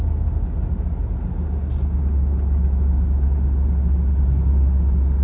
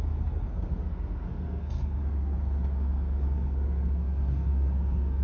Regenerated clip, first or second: second